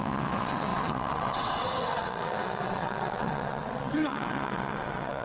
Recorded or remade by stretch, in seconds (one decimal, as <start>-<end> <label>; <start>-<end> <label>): 0.0-5.2 remade